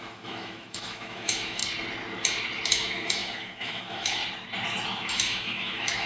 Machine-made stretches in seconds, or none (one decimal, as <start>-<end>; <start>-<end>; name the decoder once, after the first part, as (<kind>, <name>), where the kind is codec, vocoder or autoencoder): 0.0-1.6 (autoencoder, DAC-VAE); 2.7-4.2; 5.1-6.1